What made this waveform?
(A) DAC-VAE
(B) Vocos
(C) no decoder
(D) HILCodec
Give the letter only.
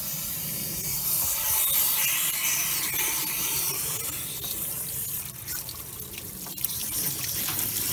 C